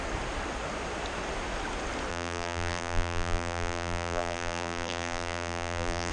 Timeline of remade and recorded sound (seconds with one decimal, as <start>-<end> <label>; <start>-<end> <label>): 0.0-2.1 recorded; 2.1-6.1 remade